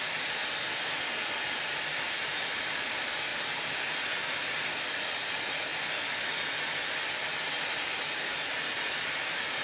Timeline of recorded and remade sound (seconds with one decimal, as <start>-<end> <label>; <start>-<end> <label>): 0.0-0.4 remade; 0.4-2.2 recorded; 2.2-3.3 remade; 3.3-4.2 recorded; 4.2-5.7 remade; 5.7-7.5 recorded; 7.5-9.6 remade